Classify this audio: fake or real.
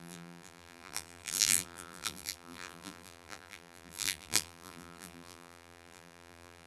fake